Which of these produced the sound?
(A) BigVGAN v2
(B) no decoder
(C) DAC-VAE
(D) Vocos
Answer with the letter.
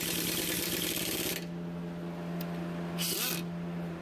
B